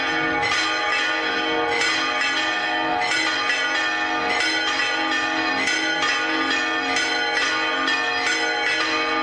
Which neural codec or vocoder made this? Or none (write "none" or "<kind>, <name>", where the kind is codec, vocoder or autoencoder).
none